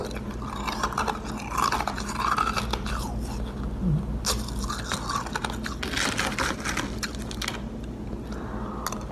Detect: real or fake real